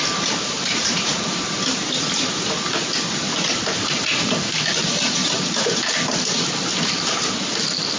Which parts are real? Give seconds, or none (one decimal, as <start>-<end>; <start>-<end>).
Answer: 0.0-0.8; 1.3-3.8; 4.3-5.2; 5.8-8.0